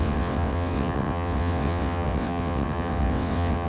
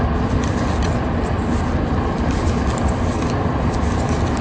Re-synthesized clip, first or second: first